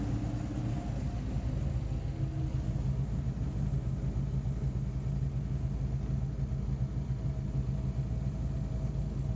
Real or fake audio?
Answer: real